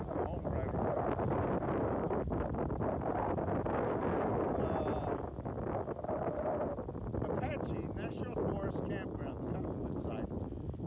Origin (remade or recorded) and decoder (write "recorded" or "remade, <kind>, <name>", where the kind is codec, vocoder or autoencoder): recorded